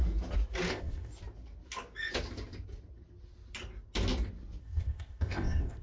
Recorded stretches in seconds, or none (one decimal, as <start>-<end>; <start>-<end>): 0.0-0.7; 1.1-4.6